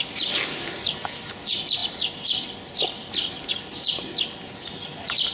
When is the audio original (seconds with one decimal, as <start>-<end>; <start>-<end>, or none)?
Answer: 0.0-1.8; 2.7-5.3